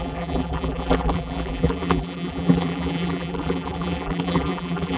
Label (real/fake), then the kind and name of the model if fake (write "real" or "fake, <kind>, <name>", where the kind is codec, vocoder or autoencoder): fake, vocoder, BigVGAN v2